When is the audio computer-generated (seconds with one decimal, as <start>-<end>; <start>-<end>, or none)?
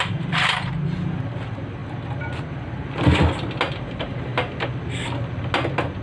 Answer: 0.0-1.8; 3.7-4.3